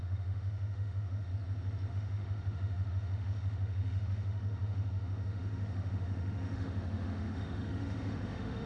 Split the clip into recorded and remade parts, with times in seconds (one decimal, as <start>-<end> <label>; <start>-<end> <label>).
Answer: 0.0-1.3 remade; 1.3-1.9 recorded; 1.9-8.7 remade

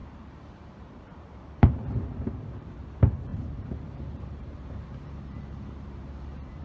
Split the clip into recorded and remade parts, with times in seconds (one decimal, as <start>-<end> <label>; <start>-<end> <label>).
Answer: 0.0-2.8 remade; 2.8-3.3 recorded; 3.3-6.6 remade

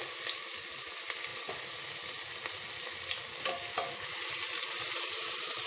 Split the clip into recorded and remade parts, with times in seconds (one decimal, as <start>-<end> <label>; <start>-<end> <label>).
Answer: 0.0-5.7 recorded

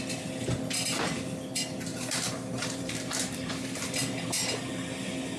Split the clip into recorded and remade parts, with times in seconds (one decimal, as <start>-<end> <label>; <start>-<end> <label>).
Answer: 0.0-1.9 recorded; 1.9-3.5 remade; 3.5-5.4 recorded

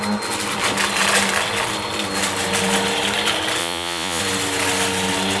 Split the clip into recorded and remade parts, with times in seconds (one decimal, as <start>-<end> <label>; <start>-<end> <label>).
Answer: 0.0-3.6 recorded; 3.6-4.2 remade; 4.2-5.4 recorded